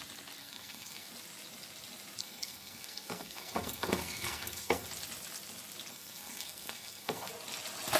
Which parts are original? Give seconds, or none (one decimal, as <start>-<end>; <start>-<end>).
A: 0.0-0.4; 1.1-2.2; 4.9-5.9; 7.3-8.0